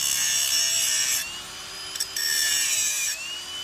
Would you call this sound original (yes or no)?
no